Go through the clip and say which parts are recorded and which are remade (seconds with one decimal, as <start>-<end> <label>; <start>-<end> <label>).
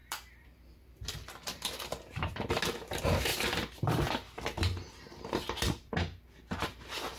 0.0-2.6 remade; 2.6-3.3 recorded; 3.3-5.9 remade; 5.9-7.2 recorded